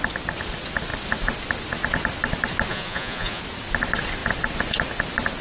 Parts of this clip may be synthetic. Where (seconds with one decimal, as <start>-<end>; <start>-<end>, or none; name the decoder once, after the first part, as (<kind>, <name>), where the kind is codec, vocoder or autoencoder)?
2.7-3.4 (vocoder, Vocos)